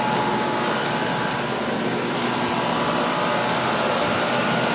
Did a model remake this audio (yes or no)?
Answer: no